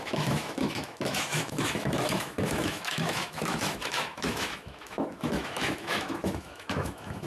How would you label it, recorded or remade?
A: remade